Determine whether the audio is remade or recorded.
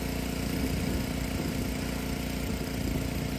recorded